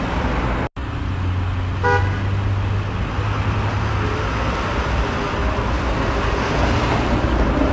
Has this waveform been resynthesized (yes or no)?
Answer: no